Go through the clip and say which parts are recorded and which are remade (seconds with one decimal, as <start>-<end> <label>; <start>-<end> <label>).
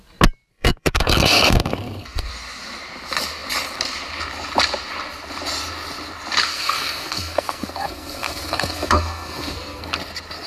0.0-0.5 recorded; 0.5-2.3 remade; 2.3-6.5 recorded; 6.5-9.9 remade; 9.9-10.5 recorded